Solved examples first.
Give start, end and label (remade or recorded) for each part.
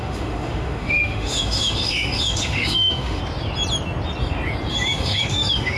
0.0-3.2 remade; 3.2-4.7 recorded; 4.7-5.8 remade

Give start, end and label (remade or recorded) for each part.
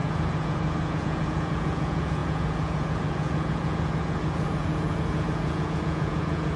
0.0-6.6 remade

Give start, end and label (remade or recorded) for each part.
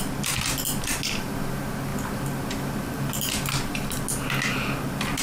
0.0-5.2 recorded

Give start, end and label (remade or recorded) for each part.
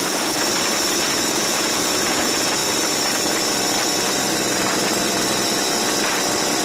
0.0-0.4 remade; 0.4-1.2 recorded; 1.2-2.6 remade; 2.6-6.6 recorded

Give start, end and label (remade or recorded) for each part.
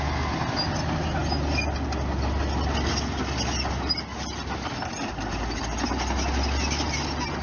0.0-7.4 recorded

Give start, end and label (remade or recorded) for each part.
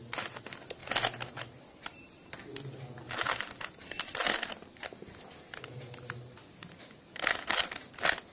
0.0-0.8 recorded; 0.8-2.3 remade; 2.3-3.8 recorded; 3.8-4.5 remade; 4.5-8.3 recorded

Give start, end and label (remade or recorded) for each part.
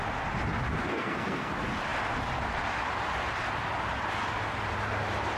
0.0-0.8 recorded; 0.8-1.5 remade; 1.5-5.4 recorded